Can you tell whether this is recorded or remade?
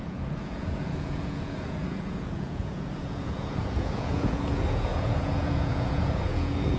remade